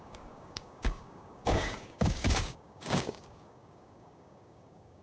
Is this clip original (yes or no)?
no